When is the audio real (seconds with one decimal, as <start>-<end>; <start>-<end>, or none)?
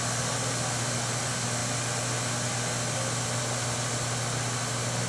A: 0.0-5.1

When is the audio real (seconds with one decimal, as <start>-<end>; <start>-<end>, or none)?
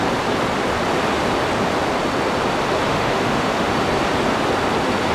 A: 0.0-2.9; 3.7-5.1